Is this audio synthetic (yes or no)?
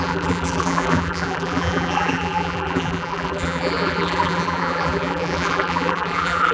yes